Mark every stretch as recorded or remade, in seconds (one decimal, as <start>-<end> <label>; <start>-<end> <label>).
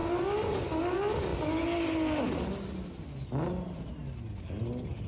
0.0-5.1 recorded